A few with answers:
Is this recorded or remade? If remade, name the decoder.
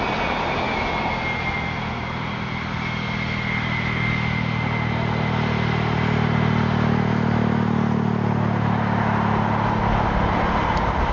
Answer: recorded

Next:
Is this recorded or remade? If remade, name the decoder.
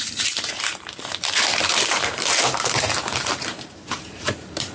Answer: remade, vocoder, BigVGAN v2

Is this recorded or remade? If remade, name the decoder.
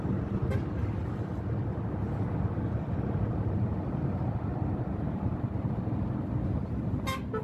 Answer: recorded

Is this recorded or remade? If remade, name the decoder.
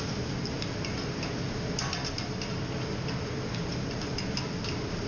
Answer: recorded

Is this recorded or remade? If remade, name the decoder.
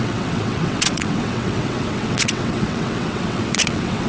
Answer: remade, vocoder, WaveNeXt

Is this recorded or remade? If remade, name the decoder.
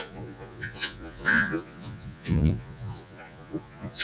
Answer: remade, vocoder, Vocos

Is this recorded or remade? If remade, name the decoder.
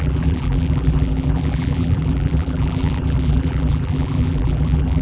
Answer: remade, vocoder, BigVGAN v2